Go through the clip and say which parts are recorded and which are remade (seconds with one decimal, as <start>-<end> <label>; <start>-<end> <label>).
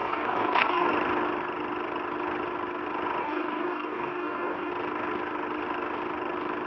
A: 0.0-0.9 remade; 0.9-3.2 recorded; 3.2-4.7 remade; 4.7-6.7 recorded